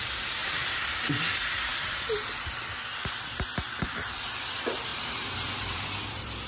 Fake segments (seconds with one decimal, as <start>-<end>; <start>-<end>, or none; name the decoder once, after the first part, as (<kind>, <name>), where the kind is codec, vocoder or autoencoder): 0.4-1.1 (vocoder, BigVGAN v2); 4.9-6.5